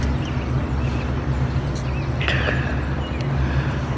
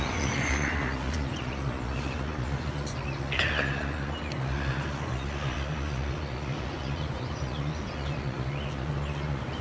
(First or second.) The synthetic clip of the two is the second